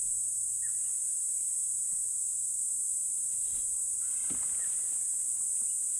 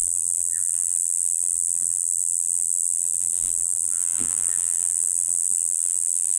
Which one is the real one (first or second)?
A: first